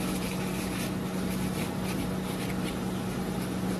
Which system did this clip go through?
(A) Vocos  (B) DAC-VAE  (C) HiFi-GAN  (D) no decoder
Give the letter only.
D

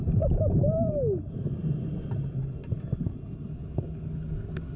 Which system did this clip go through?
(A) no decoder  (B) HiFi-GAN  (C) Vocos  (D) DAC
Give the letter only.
A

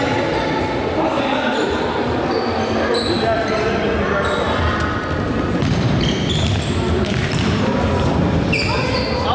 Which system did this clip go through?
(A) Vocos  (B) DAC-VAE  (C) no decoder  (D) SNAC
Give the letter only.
C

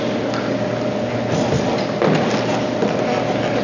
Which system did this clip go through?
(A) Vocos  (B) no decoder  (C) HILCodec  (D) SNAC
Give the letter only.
B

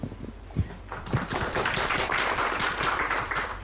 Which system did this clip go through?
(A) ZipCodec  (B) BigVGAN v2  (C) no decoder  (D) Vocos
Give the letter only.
C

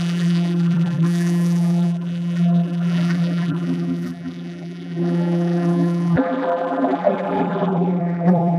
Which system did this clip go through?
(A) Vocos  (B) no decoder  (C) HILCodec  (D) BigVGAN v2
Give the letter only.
D